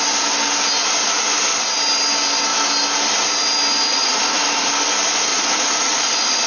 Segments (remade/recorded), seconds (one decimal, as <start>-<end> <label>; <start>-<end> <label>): 0.0-3.9 recorded; 3.9-4.7 remade; 4.7-5.3 recorded; 5.3-6.5 remade